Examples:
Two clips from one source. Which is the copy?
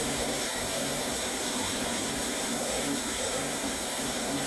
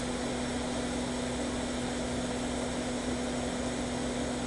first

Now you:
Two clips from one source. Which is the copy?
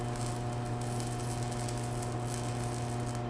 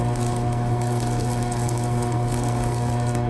second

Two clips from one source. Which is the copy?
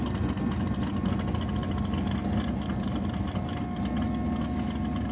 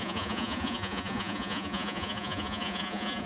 second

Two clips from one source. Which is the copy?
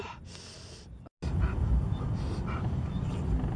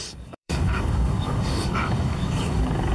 second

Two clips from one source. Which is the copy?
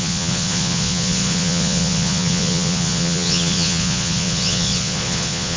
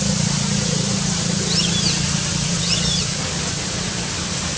first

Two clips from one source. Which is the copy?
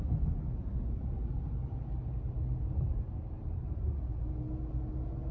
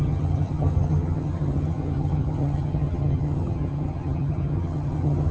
second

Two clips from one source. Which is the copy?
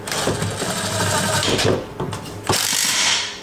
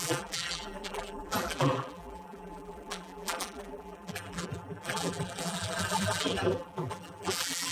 second